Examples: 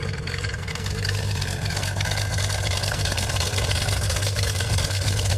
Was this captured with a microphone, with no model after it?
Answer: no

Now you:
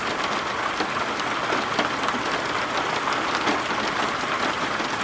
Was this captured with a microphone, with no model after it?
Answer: yes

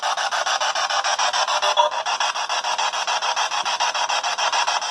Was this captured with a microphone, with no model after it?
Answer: yes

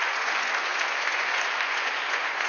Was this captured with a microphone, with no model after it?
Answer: no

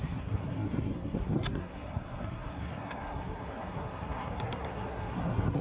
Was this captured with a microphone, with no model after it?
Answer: no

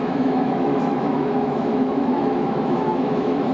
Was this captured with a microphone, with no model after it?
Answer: no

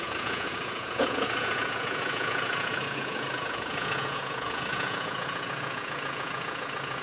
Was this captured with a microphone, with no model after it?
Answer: no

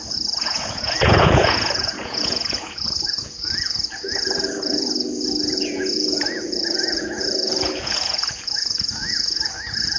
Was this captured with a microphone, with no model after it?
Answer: no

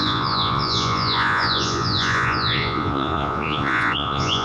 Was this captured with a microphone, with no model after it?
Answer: no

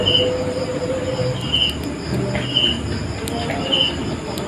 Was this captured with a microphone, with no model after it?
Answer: yes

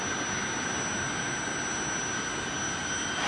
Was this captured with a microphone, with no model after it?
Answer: yes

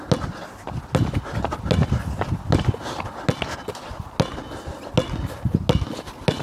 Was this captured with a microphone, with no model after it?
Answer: yes